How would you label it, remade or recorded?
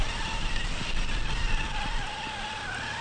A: recorded